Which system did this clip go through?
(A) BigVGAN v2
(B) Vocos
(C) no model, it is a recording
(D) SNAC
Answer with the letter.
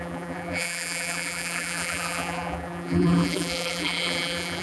A